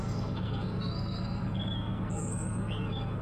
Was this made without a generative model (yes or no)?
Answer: no